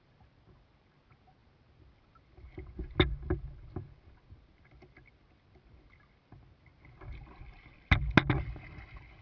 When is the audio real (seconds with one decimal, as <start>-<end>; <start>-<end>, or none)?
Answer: 0.0-9.2